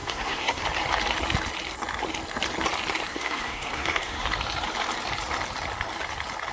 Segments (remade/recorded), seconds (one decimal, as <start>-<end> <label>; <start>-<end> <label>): 0.0-0.6 remade; 0.6-3.1 recorded; 3.1-4.2 remade; 4.2-6.5 recorded